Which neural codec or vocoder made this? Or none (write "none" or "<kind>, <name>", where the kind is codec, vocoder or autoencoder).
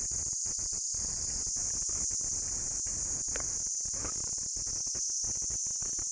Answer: none